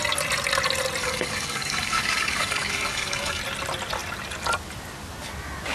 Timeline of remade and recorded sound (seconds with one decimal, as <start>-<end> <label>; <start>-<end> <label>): 0.0-1.0 recorded; 1.0-3.4 remade; 3.4-5.7 recorded